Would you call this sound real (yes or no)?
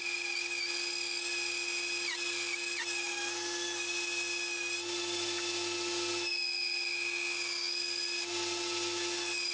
yes